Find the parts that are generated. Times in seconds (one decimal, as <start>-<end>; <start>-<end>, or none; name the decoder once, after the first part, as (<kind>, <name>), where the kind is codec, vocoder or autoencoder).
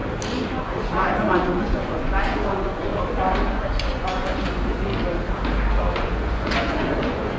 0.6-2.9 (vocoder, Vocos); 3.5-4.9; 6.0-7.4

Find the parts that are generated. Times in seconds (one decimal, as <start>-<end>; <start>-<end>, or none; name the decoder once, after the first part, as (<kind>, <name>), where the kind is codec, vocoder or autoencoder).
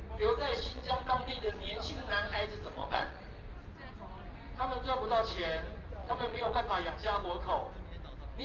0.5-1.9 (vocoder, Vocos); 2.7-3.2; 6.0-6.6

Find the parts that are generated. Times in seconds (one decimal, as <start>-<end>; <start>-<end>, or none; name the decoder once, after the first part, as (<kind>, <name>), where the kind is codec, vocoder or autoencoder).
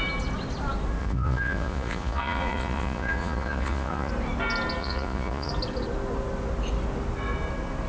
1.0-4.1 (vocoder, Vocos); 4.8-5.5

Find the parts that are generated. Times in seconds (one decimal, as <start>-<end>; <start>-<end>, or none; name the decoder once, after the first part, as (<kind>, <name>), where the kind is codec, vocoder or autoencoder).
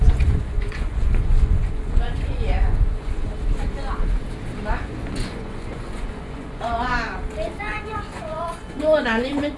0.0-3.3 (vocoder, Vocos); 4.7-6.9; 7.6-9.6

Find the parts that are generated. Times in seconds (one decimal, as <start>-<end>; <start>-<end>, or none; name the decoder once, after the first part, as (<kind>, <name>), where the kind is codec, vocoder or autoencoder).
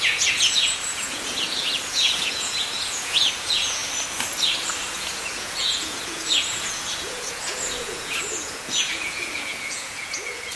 0.0-3.8 (vocoder, Vocos); 4.9-10.6